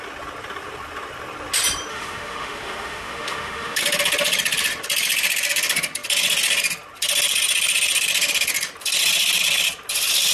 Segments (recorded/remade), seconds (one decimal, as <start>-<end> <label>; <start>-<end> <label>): 0.0-1.9 recorded; 1.9-3.8 remade; 3.8-10.3 recorded